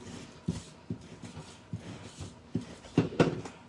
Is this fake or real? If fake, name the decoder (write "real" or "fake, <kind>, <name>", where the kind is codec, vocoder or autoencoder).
fake, vocoder, BigVGAN v2